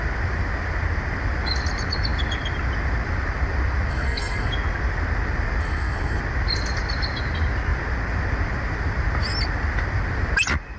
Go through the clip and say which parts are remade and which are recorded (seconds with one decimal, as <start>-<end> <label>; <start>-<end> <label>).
0.0-3.9 recorded; 3.9-4.5 remade; 4.5-5.6 recorded; 5.6-6.2 remade; 6.2-10.8 recorded